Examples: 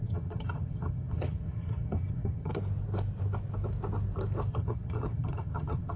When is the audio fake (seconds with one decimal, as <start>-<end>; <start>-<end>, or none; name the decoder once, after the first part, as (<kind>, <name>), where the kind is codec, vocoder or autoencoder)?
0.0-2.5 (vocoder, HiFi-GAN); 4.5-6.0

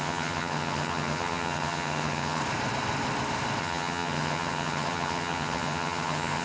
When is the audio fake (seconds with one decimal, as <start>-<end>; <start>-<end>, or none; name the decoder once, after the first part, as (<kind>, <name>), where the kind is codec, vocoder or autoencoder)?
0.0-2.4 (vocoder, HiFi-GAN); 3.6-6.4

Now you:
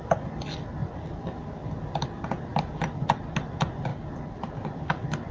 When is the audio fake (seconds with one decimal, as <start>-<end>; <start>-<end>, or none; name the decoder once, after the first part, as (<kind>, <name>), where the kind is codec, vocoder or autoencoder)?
none